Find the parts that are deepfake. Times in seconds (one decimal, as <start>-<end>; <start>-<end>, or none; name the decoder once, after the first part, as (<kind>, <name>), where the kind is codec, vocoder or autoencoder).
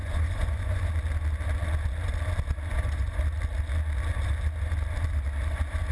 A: 0.0-0.9 (vocoder, Vocos); 2.7-3.2